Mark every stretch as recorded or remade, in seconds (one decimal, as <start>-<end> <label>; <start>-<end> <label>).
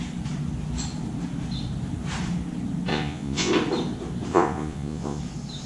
0.0-2.9 recorded; 2.9-3.5 remade; 3.5-4.3 recorded; 4.3-5.2 remade; 5.2-5.7 recorded